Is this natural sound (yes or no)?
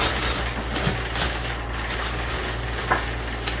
yes